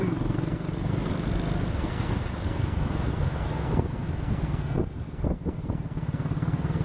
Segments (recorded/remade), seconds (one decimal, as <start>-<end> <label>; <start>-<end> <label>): 0.0-1.1 remade; 1.1-1.7 recorded; 1.7-6.8 remade